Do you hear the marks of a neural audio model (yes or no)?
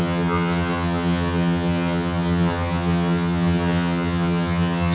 yes